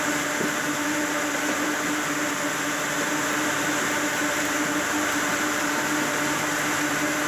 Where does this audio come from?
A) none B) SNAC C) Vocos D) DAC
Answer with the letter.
A